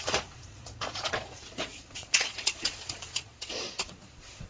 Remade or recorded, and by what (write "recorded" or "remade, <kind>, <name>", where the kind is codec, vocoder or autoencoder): remade, vocoder, Vocos